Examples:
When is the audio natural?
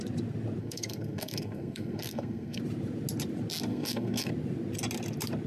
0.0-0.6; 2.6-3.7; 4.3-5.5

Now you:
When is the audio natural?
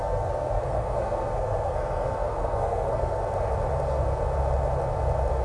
3.2-5.4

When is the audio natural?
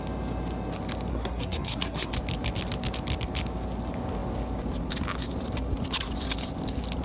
0.0-1.1; 2.1-7.0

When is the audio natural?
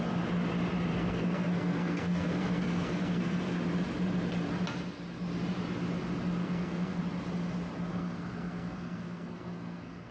0.0-0.9; 3.4-6.4; 7.0-7.9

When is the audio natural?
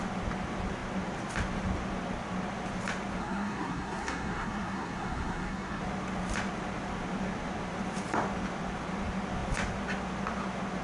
0.0-3.2; 5.8-10.8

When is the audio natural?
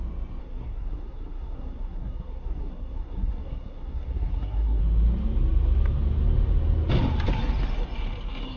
0.0-0.4; 4.8-8.6